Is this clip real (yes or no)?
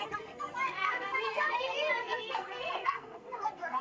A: no